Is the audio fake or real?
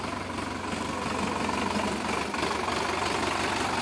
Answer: real